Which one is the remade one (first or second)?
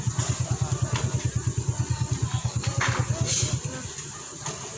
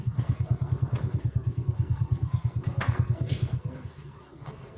second